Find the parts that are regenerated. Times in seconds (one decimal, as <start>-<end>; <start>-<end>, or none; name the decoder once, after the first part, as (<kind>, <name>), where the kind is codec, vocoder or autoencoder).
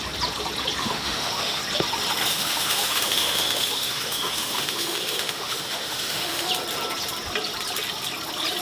0.8-1.6 (autoencoder, DAC-VAE); 2.3-6.5